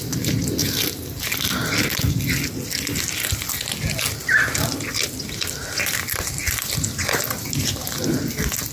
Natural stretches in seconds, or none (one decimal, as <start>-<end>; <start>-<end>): 0.0-8.7